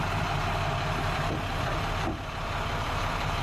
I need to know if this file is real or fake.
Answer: fake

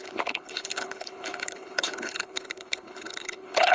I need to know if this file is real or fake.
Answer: fake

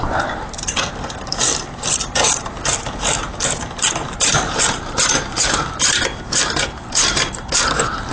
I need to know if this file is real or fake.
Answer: fake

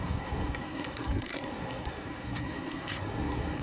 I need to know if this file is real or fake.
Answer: fake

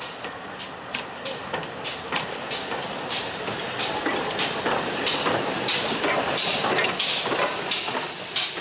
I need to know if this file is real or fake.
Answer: real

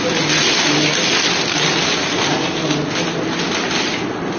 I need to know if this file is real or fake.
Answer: real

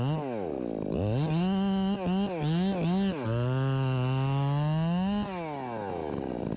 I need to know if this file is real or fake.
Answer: real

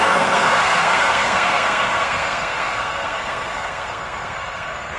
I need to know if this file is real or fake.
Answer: fake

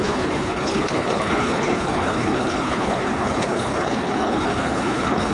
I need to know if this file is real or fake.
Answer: fake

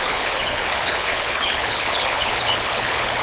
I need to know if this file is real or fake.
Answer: fake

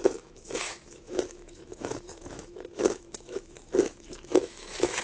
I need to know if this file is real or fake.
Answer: fake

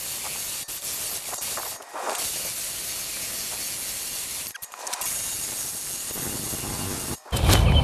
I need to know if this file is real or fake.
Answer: real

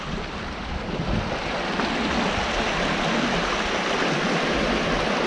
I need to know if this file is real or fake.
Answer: real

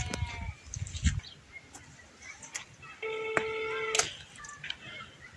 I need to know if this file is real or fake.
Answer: real